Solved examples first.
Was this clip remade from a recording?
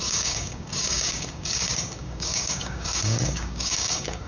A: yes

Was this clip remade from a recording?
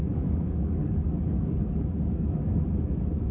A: yes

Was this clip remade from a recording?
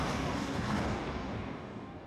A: yes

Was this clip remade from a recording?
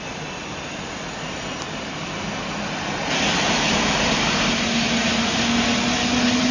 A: no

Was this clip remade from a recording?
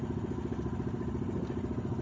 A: no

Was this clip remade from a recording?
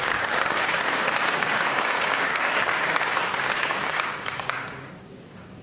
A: yes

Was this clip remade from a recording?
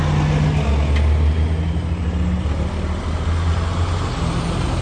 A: no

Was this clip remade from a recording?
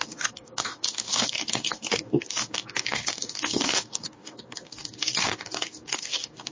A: yes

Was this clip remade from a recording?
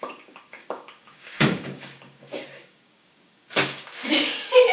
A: yes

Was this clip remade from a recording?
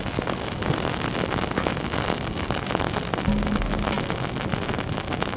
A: no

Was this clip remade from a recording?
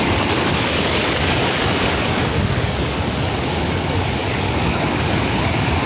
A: yes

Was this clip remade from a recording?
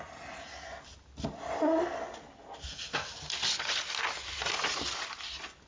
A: no